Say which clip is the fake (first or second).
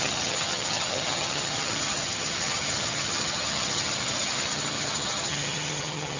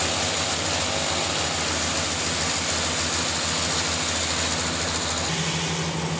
first